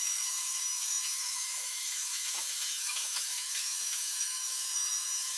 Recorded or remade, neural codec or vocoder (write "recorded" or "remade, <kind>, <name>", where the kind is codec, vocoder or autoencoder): remade, autoencoder, DAC-VAE